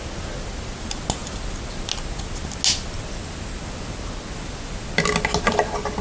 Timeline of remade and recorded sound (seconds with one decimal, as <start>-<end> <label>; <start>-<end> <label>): 0.0-6.0 recorded